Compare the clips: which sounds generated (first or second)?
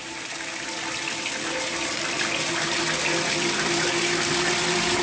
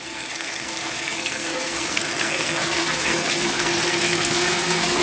second